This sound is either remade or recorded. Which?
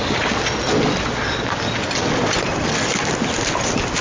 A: recorded